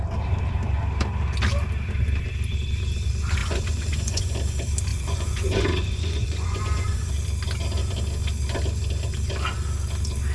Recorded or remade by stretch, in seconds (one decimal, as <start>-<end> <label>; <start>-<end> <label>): 0.0-3.4 recorded; 3.4-4.3 remade; 4.3-4.9 recorded; 4.9-7.1 remade; 7.1-10.3 recorded